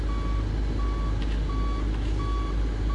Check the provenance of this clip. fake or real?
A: real